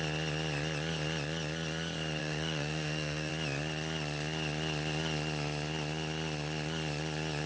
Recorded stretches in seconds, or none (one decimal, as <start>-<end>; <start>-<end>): 0.0-2.2; 3.3-7.5